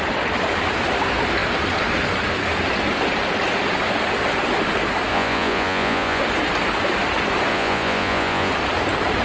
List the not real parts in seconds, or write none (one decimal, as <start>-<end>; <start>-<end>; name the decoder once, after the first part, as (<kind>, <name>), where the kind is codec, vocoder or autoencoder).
5.1-6.2 (vocoder, Vocos); 7.5-8.5